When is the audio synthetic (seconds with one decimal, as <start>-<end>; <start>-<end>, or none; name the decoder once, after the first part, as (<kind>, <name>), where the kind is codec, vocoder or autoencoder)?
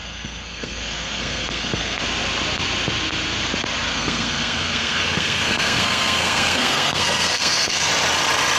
0.0-2.0 (codec, SNAC); 3.9-7.9